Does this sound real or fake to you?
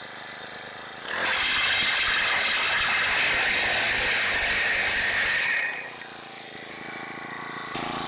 real